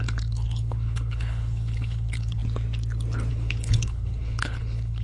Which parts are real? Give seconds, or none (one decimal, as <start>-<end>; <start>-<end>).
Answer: 2.4-3.3